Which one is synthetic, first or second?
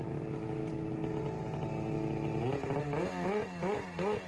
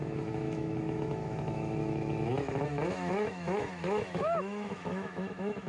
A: second